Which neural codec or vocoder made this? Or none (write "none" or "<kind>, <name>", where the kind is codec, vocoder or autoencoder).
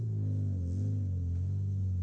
none